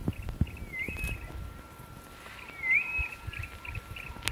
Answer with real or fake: real